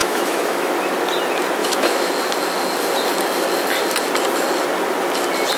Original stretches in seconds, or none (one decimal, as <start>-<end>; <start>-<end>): 0.7-1.6; 2.1-5.6